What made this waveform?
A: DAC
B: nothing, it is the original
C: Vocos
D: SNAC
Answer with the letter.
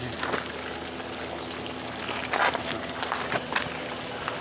B